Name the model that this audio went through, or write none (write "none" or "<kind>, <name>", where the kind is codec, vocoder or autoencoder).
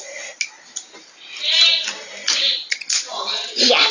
none